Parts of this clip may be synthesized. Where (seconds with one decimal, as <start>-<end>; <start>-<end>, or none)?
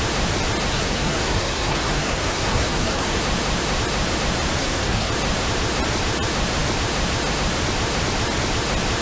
0.7-3.2; 4.6-5.1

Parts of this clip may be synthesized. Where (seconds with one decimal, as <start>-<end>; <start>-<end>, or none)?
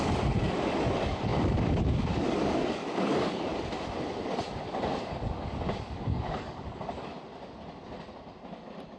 0.0-3.5; 5.0-7.1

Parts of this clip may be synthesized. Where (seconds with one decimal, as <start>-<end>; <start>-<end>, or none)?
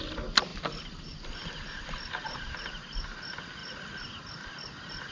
0.5-2.1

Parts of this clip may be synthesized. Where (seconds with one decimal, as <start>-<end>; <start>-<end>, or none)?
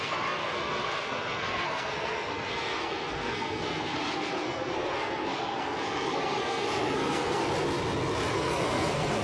0.0-7.4; 8.3-9.2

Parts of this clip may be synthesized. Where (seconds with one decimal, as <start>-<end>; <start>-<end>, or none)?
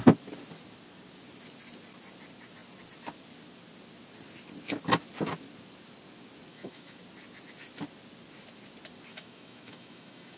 6.5-7.0; 9.1-10.4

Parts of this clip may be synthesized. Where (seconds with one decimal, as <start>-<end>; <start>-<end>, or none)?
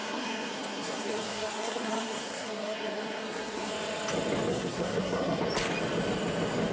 0.0-3.7; 4.5-5.4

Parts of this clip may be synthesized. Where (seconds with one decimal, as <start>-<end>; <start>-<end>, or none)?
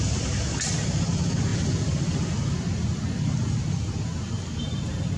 none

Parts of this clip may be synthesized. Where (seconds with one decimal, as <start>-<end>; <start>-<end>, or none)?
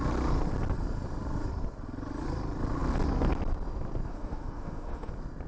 4.1-5.1